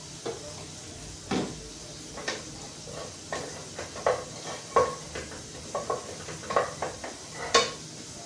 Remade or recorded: recorded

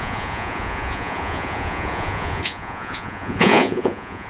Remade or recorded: remade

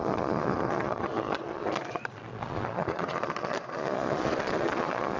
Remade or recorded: remade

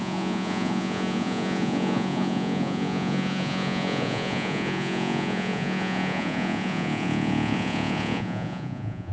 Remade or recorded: remade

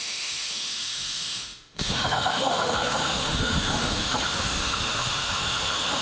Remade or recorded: remade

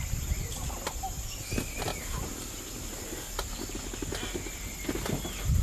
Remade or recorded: recorded